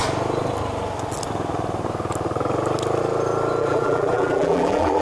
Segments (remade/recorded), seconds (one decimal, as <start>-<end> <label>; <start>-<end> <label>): 0.0-3.6 recorded; 3.6-5.0 remade